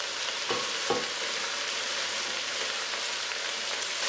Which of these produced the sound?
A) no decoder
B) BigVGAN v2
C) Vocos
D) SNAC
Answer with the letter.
A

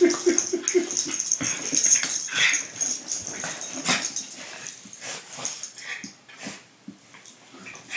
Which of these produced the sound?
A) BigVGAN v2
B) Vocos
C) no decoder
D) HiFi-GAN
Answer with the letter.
C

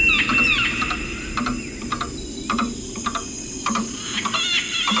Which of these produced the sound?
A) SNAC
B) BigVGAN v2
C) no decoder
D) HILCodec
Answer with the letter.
C